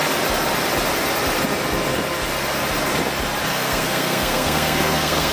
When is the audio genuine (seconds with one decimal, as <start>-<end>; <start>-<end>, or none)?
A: 0.0-3.5